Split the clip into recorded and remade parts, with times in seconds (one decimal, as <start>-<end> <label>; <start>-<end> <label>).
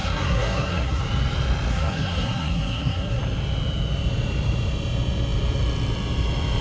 0.0-1.0 remade; 1.0-1.7 recorded; 1.7-3.2 remade; 3.2-6.6 recorded